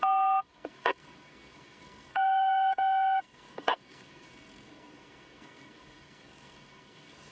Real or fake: fake